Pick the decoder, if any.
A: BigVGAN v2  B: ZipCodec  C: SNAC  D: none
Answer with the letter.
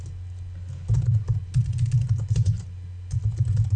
D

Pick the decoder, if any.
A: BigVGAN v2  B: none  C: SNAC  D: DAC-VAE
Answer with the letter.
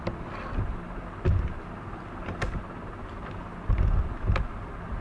B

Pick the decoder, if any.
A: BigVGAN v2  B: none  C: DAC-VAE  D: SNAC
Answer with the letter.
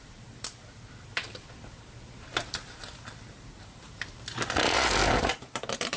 A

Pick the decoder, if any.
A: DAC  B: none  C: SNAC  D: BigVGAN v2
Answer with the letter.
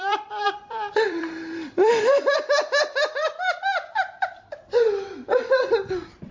D